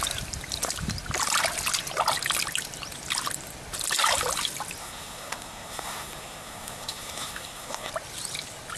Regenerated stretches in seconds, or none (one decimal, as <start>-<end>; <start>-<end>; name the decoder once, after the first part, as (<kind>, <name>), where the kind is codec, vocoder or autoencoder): 4.8-7.9 (codec, SNAC)